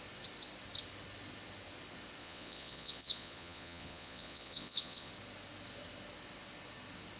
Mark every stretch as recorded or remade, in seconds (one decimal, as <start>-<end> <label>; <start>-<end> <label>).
0.0-2.2 recorded; 2.2-5.1 remade; 5.1-7.2 recorded